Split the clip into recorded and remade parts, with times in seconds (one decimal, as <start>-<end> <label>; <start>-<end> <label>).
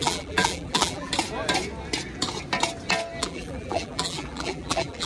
0.0-1.1 remade; 1.1-3.2 recorded; 3.2-5.1 remade